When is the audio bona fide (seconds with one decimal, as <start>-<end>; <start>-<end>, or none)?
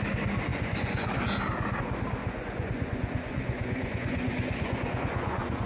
0.0-0.5; 1.2-2.2